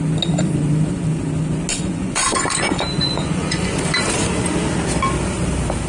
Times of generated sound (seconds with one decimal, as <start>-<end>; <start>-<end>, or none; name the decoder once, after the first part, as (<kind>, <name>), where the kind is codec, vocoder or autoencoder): 1.7-3.8 (vocoder, Vocos)